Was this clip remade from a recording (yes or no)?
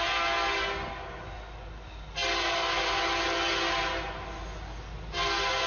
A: no